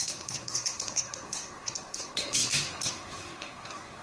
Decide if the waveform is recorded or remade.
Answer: remade